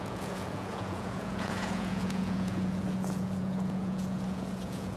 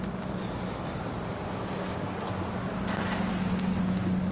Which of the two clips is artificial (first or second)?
first